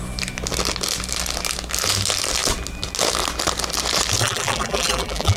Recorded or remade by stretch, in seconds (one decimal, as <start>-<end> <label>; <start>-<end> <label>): 0.0-4.2 recorded; 4.2-5.4 remade